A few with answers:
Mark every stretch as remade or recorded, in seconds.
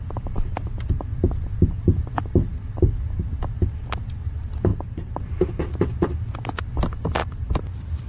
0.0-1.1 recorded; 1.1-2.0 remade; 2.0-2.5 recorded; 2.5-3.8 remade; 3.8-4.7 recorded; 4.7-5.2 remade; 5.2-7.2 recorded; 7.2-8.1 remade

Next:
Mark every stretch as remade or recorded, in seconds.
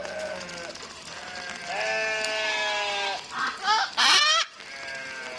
0.0-0.5 remade; 0.5-5.4 recorded